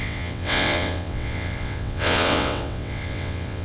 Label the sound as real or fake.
fake